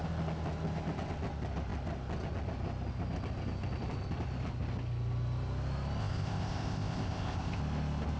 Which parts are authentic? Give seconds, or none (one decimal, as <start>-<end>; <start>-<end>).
0.0-6.0; 7.6-8.2

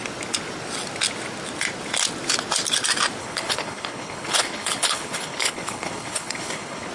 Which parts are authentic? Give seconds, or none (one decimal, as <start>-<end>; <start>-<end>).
0.0-3.2

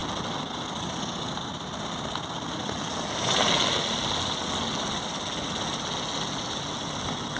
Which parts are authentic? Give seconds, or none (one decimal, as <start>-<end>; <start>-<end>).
0.0-7.4

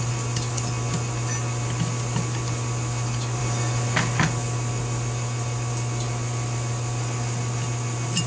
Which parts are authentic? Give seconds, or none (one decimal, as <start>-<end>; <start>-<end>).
0.0-8.3

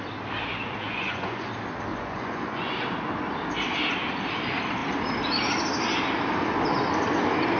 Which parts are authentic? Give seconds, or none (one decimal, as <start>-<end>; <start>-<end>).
0.0-0.6; 1.5-1.9; 2.7-7.6

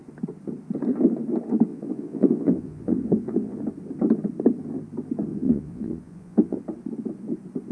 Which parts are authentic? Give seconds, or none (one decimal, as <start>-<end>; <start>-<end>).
0.0-1.7; 3.6-5.3; 6.6-7.7

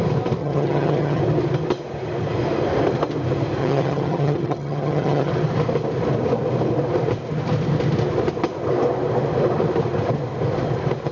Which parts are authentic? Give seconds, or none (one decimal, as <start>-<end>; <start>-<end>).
0.0-0.4; 1.2-3.6; 5.3-11.1